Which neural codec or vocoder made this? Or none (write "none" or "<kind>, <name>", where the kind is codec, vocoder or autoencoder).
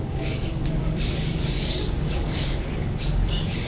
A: codec, DAC